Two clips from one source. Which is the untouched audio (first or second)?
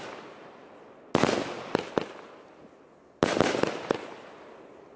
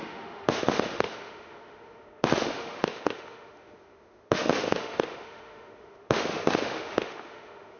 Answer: first